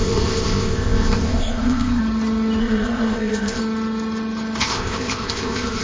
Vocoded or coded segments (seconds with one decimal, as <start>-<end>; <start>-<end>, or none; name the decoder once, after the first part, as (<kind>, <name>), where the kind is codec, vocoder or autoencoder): 0.0-2.0 (codec, ZipCodec); 2.6-3.6; 4.6-5.8